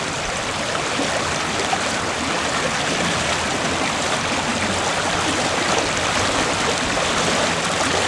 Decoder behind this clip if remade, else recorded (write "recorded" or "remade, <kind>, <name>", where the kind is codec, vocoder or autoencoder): recorded